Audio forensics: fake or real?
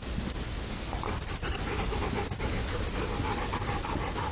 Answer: real